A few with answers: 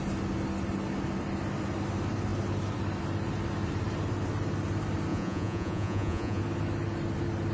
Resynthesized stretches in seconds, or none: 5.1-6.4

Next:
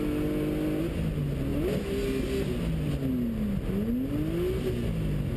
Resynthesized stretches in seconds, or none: none

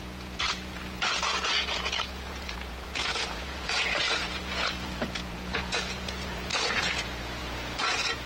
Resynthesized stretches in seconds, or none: 0.0-8.3